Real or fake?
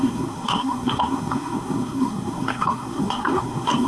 fake